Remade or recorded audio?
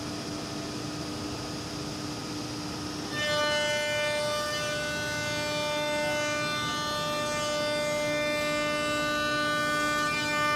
recorded